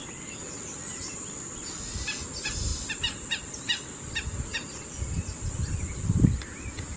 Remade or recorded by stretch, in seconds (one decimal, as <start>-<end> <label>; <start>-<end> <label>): 0.0-2.7 recorded; 2.7-7.0 remade